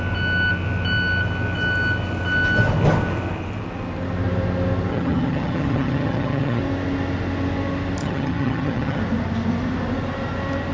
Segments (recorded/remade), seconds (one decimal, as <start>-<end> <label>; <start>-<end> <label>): 0.0-4.9 recorded; 4.9-6.6 remade; 6.6-8.0 recorded; 8.0-9.0 remade; 9.0-10.7 recorded